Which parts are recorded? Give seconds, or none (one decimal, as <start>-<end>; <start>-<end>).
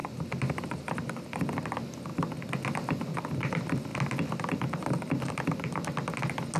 1.2-6.6